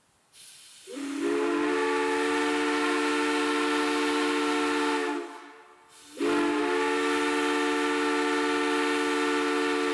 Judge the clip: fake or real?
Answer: real